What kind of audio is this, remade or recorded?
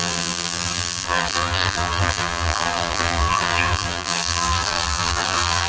remade